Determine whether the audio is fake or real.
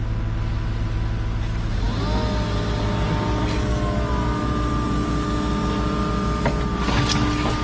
real